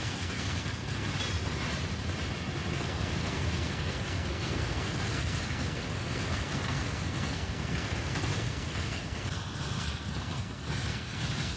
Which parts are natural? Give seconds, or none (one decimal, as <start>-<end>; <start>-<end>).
1.1-2.7